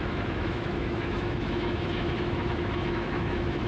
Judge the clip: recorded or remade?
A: remade